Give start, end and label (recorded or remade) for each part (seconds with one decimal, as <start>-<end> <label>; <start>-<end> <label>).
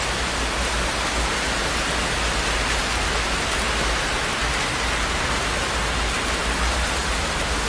0.0-7.7 recorded